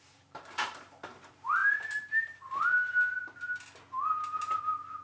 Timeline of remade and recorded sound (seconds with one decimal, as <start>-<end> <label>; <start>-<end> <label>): 0.0-1.6 remade; 1.6-4.6 recorded; 4.6-5.0 remade